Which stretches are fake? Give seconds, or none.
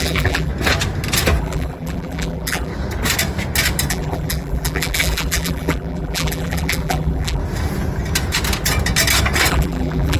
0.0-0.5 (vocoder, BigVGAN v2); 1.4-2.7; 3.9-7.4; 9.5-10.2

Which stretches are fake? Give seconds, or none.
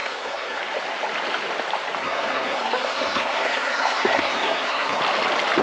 0.0-0.6 (codec, SNAC); 2.0-5.0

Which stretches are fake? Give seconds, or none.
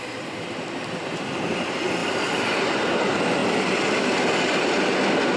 0.0-3.4 (vocoder, BigVGAN v2); 4.4-5.4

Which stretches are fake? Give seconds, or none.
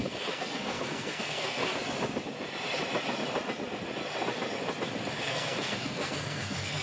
0.0-1.6 (codec, SNAC); 5.2-6.8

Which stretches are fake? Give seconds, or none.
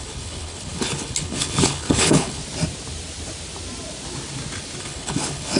0.0-2.4 (codec, HILCodec); 4.8-5.6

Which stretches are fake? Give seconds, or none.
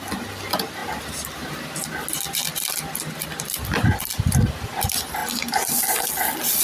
none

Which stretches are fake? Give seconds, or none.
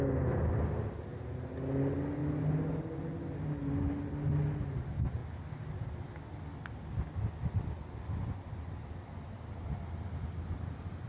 none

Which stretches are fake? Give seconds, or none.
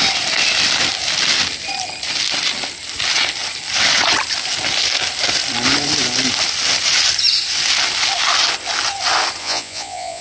9.4-10.2 (vocoder, Vocos)